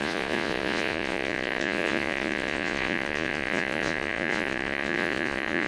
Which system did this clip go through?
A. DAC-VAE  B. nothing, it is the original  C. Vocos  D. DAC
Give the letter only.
C